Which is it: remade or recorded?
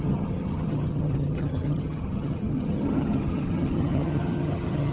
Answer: remade